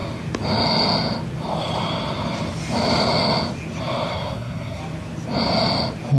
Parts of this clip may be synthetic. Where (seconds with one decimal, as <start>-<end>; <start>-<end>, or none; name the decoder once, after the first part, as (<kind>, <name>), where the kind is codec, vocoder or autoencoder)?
4.1-4.8 (codec, SNAC)